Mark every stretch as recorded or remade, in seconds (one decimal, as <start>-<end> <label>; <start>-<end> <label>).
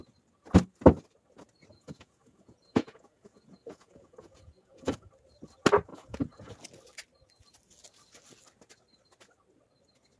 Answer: 0.0-1.7 recorded; 1.7-5.1 remade; 5.1-5.9 recorded; 5.9-6.5 remade; 6.5-10.2 recorded